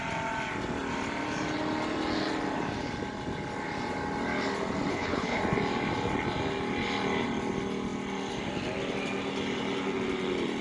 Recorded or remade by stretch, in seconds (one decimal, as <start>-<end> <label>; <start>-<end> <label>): 0.0-4.9 recorded; 4.9-5.4 remade; 5.4-10.6 recorded